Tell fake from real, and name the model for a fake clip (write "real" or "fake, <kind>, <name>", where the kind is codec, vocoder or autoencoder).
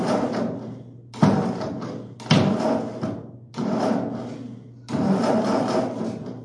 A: real